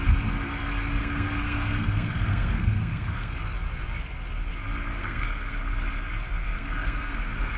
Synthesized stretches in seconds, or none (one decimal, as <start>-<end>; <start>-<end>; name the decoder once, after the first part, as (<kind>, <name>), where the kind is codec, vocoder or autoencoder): 1.0-3.3 (codec, SNAC); 5.0-5.6; 6.4-7.6